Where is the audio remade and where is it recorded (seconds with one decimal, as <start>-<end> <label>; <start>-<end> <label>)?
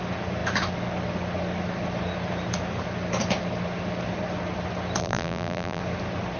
0.0-5.0 recorded; 5.0-5.8 remade; 5.8-6.4 recorded